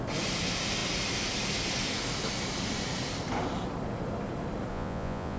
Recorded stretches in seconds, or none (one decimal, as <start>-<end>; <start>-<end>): 0.0-4.7